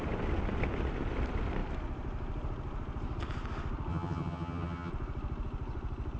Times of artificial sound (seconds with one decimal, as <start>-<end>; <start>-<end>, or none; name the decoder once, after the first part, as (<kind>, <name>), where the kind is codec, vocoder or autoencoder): 3.9-4.9 (vocoder, HiFi-GAN)